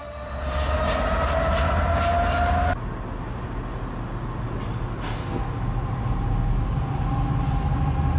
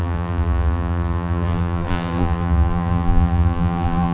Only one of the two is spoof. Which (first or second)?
second